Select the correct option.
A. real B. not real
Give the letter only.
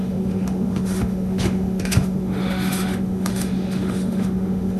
B